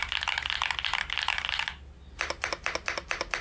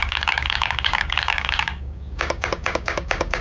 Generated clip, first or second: second